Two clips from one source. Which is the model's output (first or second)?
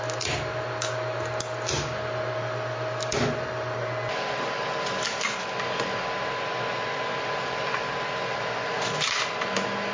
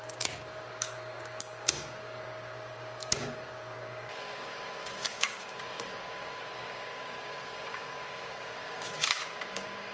second